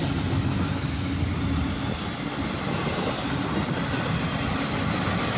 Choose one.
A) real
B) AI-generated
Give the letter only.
A